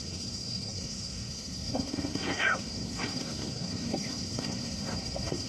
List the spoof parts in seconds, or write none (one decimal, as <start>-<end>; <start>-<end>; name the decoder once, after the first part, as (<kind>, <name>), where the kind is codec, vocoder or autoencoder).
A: 0.0-5.5 (codec, SNAC)